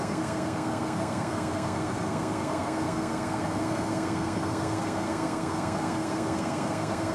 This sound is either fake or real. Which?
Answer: fake